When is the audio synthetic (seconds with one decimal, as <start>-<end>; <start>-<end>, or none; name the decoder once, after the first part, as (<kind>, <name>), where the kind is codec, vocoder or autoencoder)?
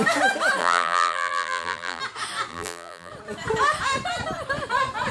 0.6-2.0 (vocoder, BigVGAN v2); 2.5-3.1